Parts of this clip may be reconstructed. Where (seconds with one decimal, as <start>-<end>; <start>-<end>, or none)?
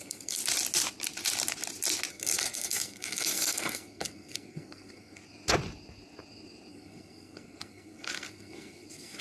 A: 0.0-0.4; 2.1-5.2; 6.7-9.2